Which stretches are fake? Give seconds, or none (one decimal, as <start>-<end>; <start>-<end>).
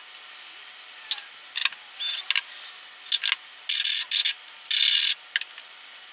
none